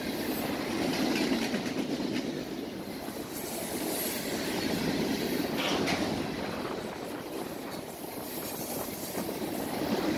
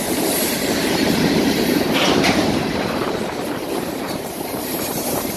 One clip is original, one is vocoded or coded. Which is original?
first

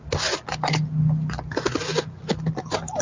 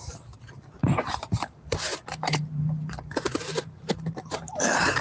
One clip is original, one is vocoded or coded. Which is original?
first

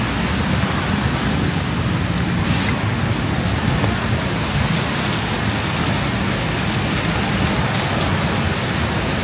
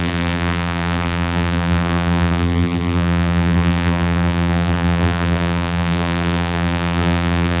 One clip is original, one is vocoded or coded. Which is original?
first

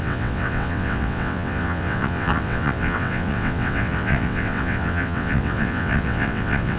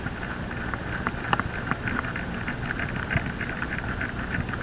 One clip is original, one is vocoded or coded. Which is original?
second